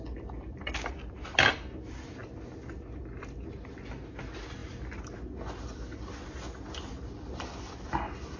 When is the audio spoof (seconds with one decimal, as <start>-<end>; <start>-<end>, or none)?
none